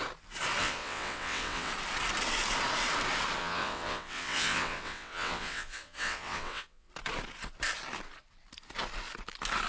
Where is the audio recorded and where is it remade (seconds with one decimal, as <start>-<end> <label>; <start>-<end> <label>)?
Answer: 0.0-0.6 recorded; 0.6-1.7 remade; 1.7-3.4 recorded; 3.4-6.9 remade; 6.9-9.7 recorded